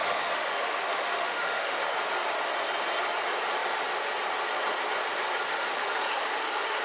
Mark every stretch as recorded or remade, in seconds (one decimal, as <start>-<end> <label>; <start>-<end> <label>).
0.0-1.9 remade; 1.9-5.5 recorded; 5.5-6.8 remade